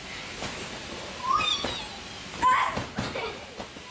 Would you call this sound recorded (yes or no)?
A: yes